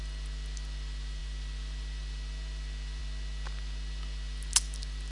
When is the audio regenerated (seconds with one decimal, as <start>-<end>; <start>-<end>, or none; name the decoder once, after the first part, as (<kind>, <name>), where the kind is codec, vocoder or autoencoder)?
none